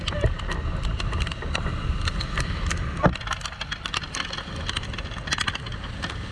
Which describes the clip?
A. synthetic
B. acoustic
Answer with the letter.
B